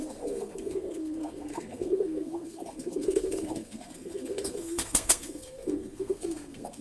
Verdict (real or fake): fake